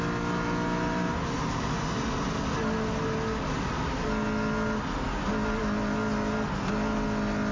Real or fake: real